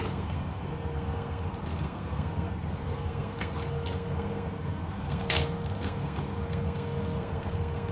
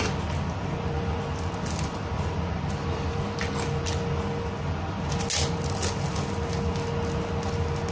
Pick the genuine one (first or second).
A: second